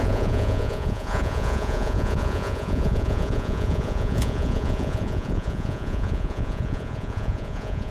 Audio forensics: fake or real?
fake